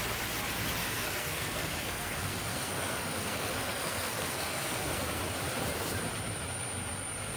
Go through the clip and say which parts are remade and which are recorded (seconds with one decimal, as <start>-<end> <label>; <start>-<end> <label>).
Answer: 0.0-0.8 recorded; 0.8-5.2 remade; 5.2-7.4 recorded